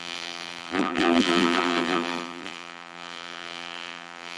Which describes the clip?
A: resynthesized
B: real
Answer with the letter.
A